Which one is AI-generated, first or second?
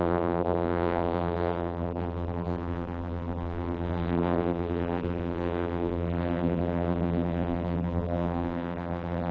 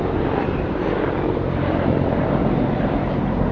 first